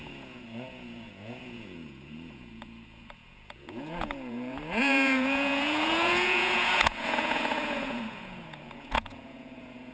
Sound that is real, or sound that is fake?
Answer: fake